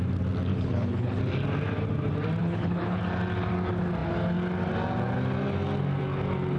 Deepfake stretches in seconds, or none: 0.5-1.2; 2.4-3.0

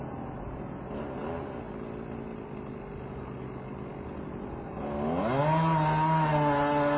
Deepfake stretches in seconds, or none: none

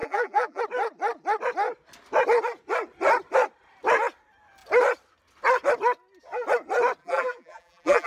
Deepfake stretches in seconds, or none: 0.0-0.6; 7.0-8.1

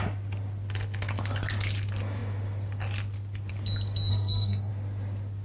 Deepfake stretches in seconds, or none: 4.1-4.7

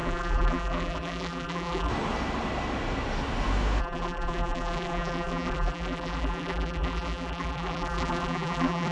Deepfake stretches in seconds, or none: 0.0-1.9; 3.8-8.9

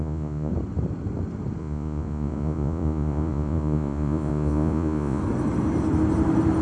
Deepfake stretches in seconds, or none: 0.0-0.5; 1.6-5.2

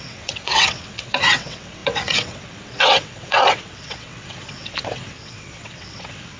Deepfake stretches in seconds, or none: 0.0-6.4

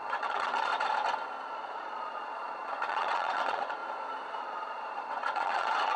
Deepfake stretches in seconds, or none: 0.0-0.7; 1.5-3.8; 4.4-6.0